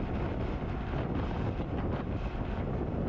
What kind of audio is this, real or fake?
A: real